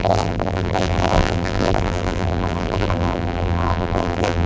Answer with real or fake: fake